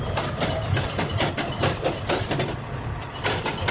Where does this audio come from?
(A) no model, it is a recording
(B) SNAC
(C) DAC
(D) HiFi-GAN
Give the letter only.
A